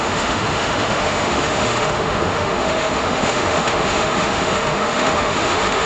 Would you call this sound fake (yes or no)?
yes